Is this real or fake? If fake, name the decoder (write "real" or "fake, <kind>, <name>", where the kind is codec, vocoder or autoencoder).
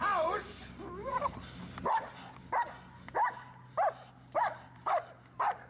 real